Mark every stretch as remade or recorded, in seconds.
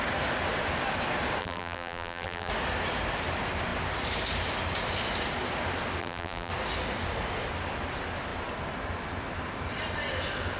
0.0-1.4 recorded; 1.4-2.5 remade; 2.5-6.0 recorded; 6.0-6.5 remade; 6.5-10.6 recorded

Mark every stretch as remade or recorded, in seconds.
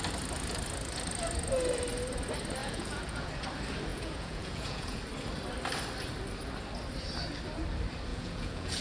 0.0-2.6 recorded; 2.6-3.3 remade; 3.3-3.9 recorded; 3.9-5.0 remade; 5.0-8.1 recorded; 8.1-8.8 remade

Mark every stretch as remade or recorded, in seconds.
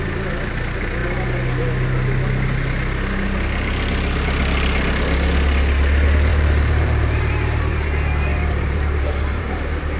0.0-6.3 recorded; 6.3-7.3 remade; 7.3-8.3 recorded; 8.3-10.0 remade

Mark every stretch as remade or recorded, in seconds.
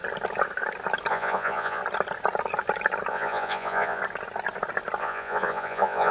0.0-1.1 recorded; 1.1-1.8 remade; 1.8-3.1 recorded; 3.1-4.0 remade; 4.0-5.0 recorded; 5.0-6.1 remade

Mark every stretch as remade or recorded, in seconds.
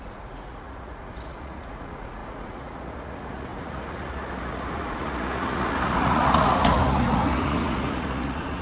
0.0-8.6 remade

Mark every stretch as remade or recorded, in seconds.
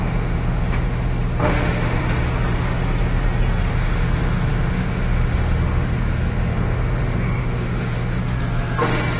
0.0-2.0 remade; 2.0-3.7 recorded; 3.7-8.2 remade; 8.2-9.2 recorded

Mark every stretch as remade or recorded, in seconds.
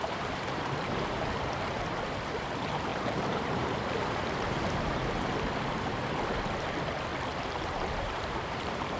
0.0-2.9 recorded; 2.9-4.6 remade; 4.6-7.1 recorded; 7.1-9.0 remade